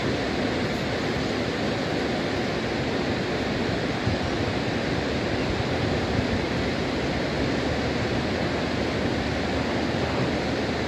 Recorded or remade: recorded